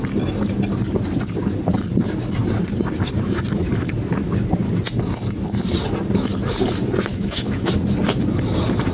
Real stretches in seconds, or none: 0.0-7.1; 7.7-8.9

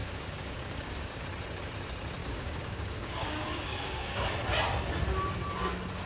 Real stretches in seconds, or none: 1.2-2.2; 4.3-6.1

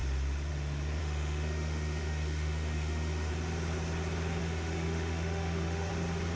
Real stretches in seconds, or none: 0.0-1.0; 3.3-4.4; 5.9-6.4

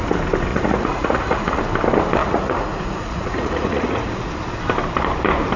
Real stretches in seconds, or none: 0.0-0.5; 1.6-2.2; 4.3-5.6